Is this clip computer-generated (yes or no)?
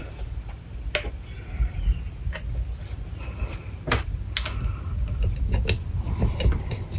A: no